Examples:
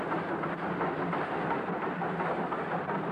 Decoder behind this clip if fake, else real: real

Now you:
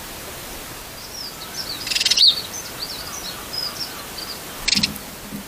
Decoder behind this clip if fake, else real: real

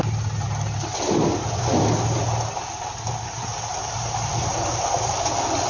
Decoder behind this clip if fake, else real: real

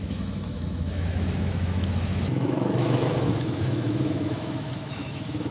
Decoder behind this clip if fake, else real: fake, autoencoder, DAC-VAE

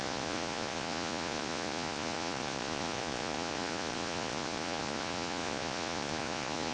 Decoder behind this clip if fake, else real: fake, vocoder, Vocos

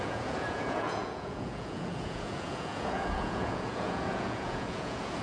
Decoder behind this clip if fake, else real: fake, vocoder, Vocos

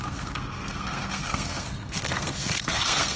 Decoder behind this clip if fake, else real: fake, codec, SNAC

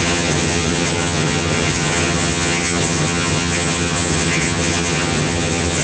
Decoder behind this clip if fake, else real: fake, vocoder, HiFi-GAN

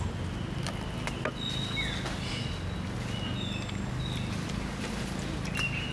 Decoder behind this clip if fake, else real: real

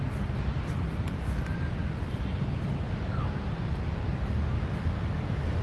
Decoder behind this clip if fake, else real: real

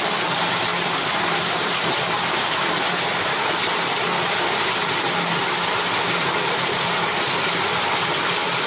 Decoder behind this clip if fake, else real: real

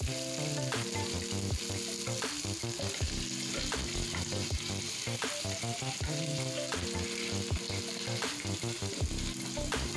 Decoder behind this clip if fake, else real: real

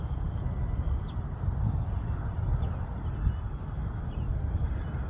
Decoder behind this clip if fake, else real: real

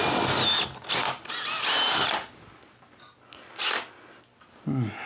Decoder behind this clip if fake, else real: real